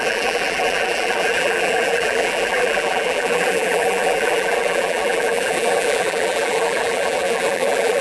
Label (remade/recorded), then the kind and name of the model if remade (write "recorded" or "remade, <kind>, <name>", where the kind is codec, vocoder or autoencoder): remade, vocoder, BigVGAN v2